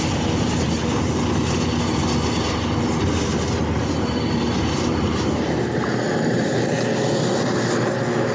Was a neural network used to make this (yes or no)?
no